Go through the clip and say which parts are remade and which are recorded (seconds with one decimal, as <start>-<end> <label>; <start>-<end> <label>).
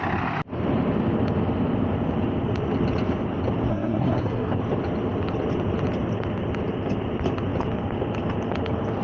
0.0-3.7 recorded; 3.7-4.6 remade; 4.6-9.0 recorded